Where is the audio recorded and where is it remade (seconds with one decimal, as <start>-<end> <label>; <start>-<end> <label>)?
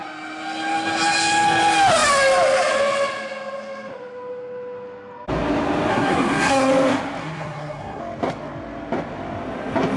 0.0-5.9 recorded; 5.9-6.7 remade; 6.7-7.2 recorded; 7.2-8.0 remade; 8.0-10.0 recorded